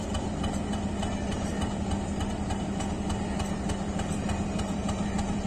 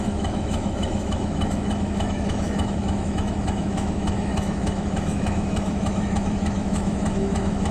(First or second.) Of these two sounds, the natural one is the first